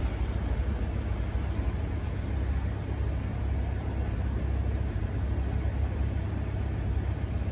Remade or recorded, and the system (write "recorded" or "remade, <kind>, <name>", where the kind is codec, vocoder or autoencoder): recorded